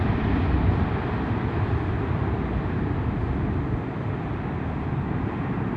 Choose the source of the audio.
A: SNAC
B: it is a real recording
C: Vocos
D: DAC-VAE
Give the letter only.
B